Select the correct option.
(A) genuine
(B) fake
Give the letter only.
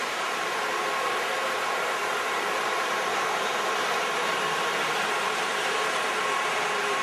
B